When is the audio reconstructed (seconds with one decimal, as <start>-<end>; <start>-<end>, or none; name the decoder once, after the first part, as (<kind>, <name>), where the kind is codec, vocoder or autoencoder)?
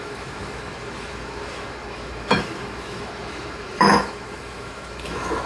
0.0-5.5 (autoencoder, DAC-VAE)